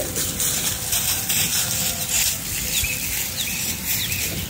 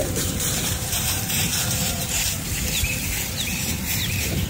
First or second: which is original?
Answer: first